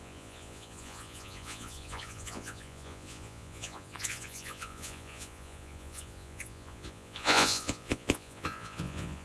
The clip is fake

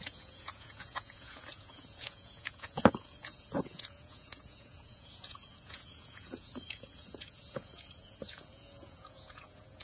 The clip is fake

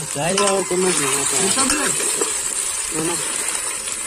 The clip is fake